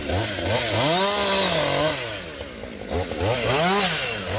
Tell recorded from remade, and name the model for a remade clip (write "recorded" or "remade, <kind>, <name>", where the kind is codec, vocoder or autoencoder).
recorded